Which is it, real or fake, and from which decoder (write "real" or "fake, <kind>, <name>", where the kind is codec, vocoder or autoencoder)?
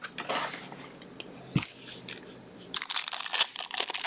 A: real